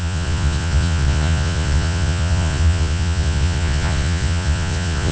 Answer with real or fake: fake